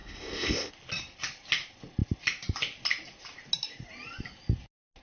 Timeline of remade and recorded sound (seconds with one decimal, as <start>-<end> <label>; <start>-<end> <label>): 0.0-0.7 remade; 0.7-5.0 recorded